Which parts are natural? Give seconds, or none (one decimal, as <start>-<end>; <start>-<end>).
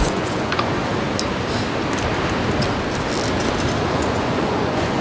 0.8-3.8